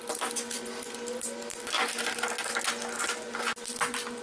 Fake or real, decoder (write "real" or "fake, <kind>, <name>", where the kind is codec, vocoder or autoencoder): real